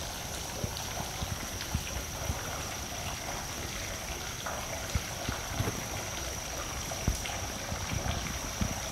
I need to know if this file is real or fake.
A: real